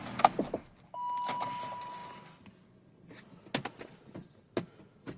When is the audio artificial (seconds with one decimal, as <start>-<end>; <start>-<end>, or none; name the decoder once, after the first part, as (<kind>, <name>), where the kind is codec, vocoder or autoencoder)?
none